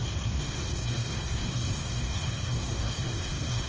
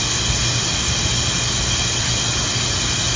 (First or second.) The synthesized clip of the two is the first